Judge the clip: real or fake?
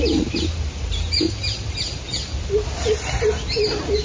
real